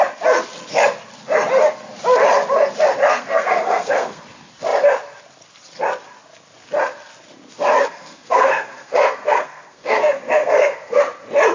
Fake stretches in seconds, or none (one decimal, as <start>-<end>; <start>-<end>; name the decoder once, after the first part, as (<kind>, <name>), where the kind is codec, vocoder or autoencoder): 3.0-4.2 (codec, SNAC); 7.8-11.0